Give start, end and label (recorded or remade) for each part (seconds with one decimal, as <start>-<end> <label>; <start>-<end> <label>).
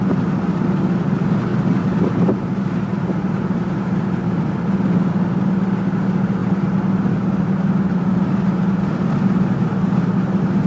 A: 0.0-1.5 recorded; 1.5-2.5 remade; 2.5-2.9 recorded; 2.9-4.2 remade; 4.2-7.9 recorded; 7.9-8.6 remade; 8.6-10.7 recorded